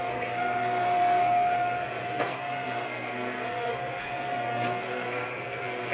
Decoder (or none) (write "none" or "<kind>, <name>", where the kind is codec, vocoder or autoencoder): codec, SNAC